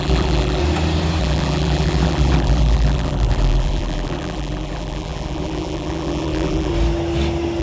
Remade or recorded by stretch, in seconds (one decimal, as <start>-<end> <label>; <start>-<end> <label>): 0.0-0.6 remade; 0.6-1.2 recorded; 1.2-6.7 remade; 6.7-7.6 recorded